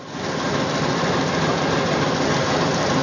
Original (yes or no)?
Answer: yes